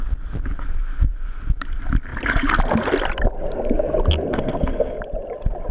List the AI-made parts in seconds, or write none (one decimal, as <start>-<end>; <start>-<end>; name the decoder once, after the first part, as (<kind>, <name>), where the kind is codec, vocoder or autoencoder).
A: 4.3-5.0 (codec, SNAC)